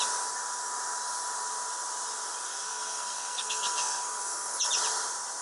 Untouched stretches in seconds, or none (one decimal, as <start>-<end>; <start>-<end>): 0.0-2.5; 4.5-5.4